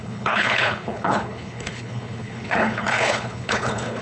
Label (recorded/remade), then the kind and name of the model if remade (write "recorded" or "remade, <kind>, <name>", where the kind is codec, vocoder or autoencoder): remade, codec, HILCodec